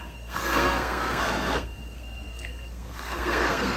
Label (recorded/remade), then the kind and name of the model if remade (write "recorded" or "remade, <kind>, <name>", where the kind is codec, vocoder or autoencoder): remade, codec, SNAC